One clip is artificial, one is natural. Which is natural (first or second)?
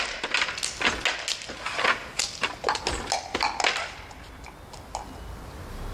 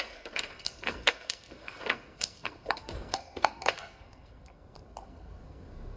first